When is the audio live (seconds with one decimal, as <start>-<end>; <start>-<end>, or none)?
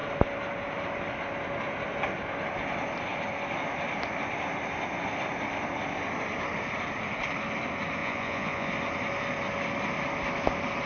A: 0.0-8.0; 8.7-10.9